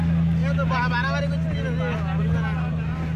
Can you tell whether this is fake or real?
real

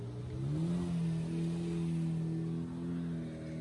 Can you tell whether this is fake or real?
real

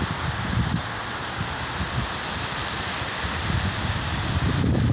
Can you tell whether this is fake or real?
fake